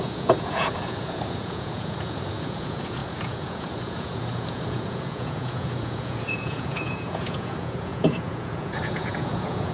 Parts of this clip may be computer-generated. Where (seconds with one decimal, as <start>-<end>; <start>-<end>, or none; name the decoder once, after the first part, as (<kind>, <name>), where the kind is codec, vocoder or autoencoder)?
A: 0.0-9.7 (vocoder, Vocos)